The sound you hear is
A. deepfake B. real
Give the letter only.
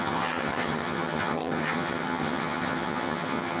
A